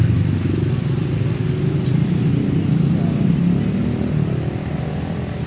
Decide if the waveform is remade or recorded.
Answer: recorded